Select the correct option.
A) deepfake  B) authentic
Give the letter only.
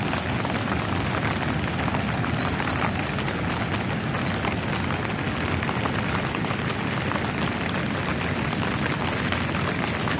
B